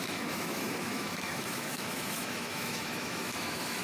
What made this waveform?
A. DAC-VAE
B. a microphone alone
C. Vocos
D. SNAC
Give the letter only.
A